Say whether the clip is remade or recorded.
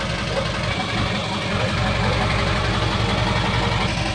recorded